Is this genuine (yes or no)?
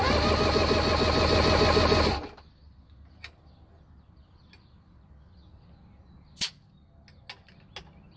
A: yes